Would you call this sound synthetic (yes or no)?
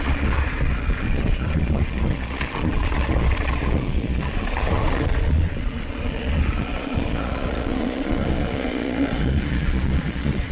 yes